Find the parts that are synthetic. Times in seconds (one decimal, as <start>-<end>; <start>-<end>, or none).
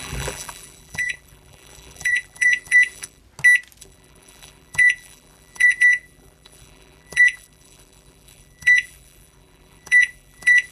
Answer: 0.0-3.2; 3.8-10.7